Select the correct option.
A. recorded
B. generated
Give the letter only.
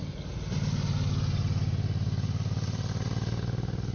A